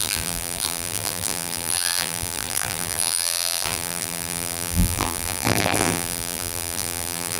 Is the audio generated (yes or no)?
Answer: yes